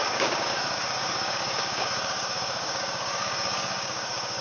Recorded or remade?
remade